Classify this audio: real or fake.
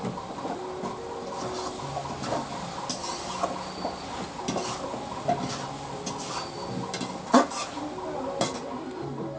real